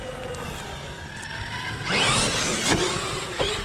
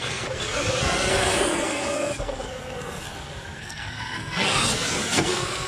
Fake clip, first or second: second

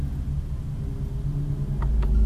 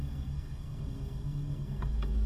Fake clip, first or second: second